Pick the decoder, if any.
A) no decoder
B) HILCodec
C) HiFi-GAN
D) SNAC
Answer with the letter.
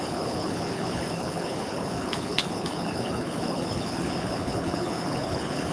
B